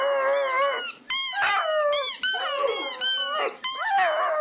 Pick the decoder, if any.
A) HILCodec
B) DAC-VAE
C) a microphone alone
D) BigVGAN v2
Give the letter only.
C